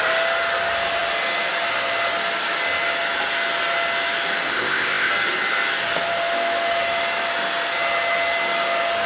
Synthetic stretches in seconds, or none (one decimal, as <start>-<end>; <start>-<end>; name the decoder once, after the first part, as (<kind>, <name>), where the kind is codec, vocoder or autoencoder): 4.5-5.1 (codec, ZipCodec)